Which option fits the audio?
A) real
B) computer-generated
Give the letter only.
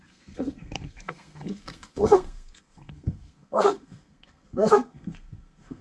B